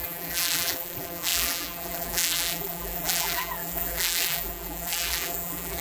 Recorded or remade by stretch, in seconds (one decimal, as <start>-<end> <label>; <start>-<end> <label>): 0.0-5.8 remade

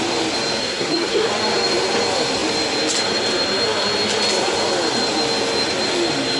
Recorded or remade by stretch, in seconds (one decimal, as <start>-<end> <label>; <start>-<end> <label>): 0.0-0.6 recorded; 0.6-1.3 remade; 1.3-6.4 recorded

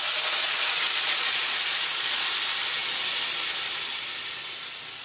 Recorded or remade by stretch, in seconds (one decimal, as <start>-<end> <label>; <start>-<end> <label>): 0.0-0.4 recorded; 0.4-2.2 remade; 2.2-5.0 recorded

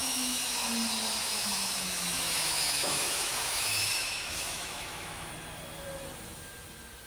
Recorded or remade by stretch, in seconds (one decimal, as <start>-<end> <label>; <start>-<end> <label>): 0.0-0.7 remade; 0.7-1.2 recorded; 1.2-5.3 remade; 5.3-7.1 recorded